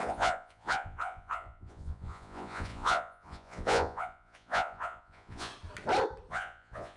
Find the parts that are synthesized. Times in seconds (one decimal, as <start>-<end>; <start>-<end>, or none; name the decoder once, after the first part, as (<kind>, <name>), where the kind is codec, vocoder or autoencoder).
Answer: 0.0-5.5 (vocoder, Vocos); 6.3-7.0